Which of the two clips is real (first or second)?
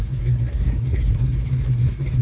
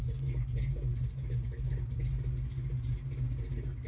second